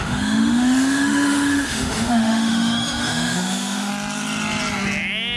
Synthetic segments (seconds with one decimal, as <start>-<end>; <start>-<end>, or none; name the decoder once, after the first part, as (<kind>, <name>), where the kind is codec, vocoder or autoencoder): 0.0-3.9 (autoencoder, DAC-VAE)